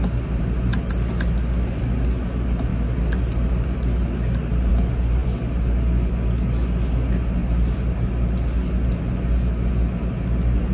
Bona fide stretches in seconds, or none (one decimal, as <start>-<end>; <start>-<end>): 0.0-10.7